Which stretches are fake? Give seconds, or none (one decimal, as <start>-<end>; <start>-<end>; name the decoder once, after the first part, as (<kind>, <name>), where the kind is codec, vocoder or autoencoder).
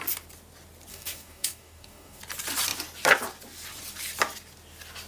0.9-2.2 (codec, DAC)